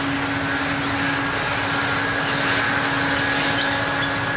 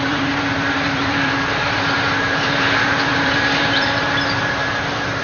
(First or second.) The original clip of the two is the first